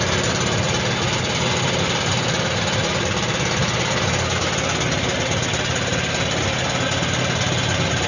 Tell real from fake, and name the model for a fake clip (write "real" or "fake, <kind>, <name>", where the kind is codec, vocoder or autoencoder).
real